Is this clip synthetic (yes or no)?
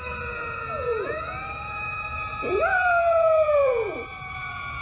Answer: yes